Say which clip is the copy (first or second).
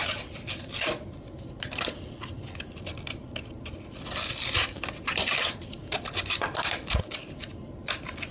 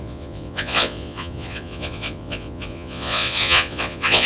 second